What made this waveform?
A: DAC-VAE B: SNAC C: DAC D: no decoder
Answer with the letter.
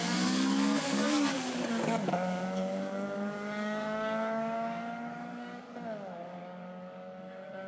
C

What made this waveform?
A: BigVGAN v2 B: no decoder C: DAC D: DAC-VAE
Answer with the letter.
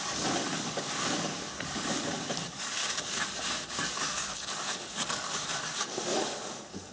C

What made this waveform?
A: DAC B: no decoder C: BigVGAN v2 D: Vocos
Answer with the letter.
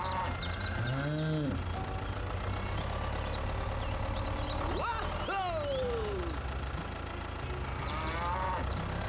B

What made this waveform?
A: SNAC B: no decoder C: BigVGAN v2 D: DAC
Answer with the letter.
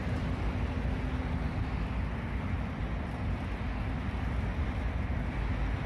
B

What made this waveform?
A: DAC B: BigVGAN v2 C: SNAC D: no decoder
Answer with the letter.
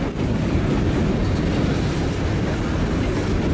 D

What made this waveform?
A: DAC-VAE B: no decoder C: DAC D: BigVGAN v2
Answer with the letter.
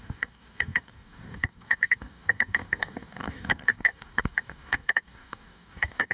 C